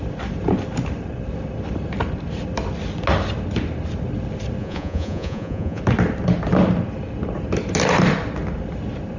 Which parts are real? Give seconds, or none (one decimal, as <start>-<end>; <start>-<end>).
0.0-4.6; 5.8-9.2